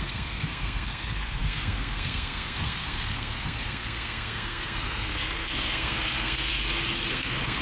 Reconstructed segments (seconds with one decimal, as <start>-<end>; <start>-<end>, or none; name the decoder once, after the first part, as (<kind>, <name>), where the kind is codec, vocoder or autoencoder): 0.0-6.5 (codec, SNAC); 7.1-7.6